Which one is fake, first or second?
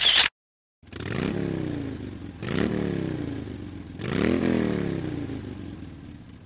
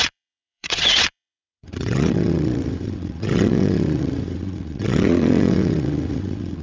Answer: second